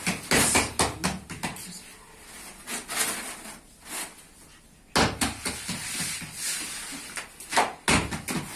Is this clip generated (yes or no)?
no